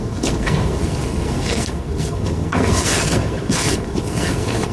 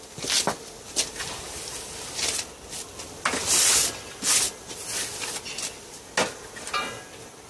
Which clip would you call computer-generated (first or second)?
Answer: first